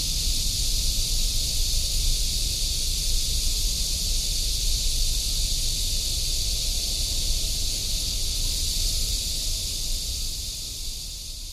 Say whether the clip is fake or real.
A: real